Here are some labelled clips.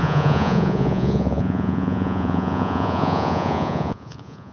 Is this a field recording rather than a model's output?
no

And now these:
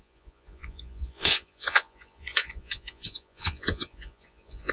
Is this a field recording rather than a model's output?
no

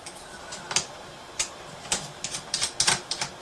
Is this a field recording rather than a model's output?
yes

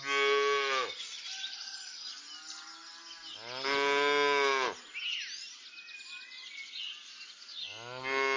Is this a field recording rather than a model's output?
yes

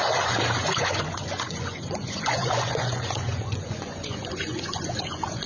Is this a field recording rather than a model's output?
no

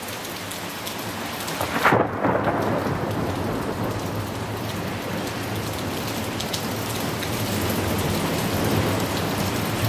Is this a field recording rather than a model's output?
yes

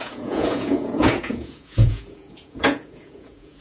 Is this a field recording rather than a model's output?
no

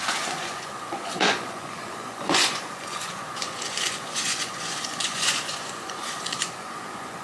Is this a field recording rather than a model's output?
no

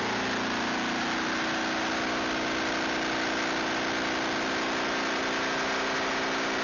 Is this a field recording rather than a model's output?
yes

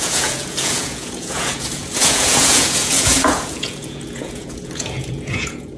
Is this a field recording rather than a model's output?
no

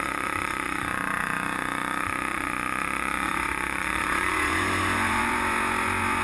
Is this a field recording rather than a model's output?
no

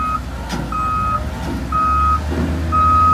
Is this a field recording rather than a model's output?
yes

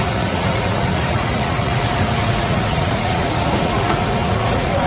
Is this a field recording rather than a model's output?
no